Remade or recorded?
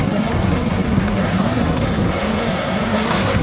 remade